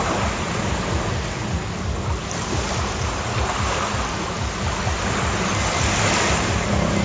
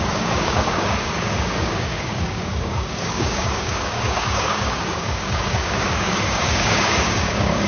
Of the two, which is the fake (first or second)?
second